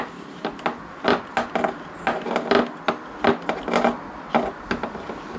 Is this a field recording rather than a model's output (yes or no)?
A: yes